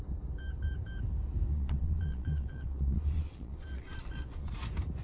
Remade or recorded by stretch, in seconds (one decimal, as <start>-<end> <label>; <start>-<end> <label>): 0.0-1.5 recorded; 1.5-4.5 remade; 4.5-5.0 recorded